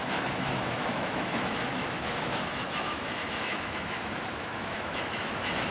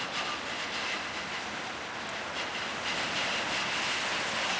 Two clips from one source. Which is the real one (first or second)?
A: second